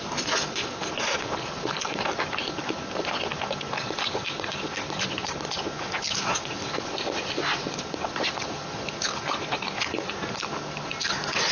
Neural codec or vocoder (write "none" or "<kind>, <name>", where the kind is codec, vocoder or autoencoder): none